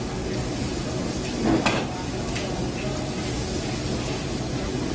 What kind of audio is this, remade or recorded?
recorded